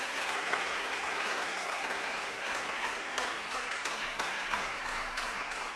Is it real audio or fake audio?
fake